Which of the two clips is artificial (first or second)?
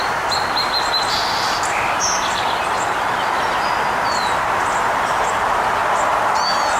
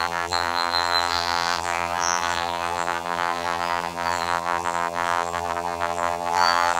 second